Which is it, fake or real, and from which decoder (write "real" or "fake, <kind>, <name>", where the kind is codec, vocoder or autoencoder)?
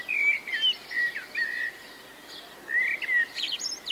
real